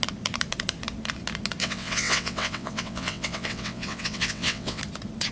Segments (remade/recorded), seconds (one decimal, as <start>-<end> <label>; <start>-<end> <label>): 0.0-1.6 recorded; 1.6-4.8 remade; 4.8-5.3 recorded